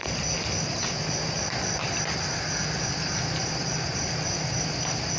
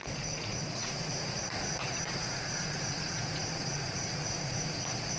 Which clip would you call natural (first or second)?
first